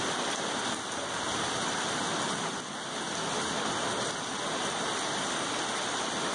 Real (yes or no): yes